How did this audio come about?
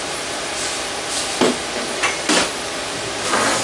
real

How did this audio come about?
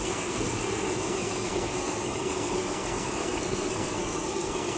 fake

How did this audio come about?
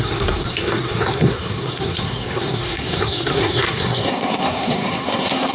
fake